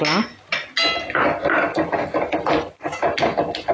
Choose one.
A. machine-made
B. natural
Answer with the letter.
B